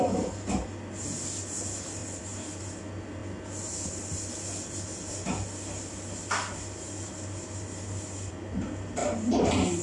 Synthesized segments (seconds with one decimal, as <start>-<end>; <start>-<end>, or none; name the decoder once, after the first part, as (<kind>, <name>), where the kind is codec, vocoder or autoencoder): none